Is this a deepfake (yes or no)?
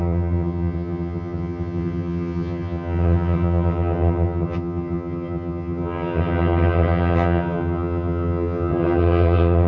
yes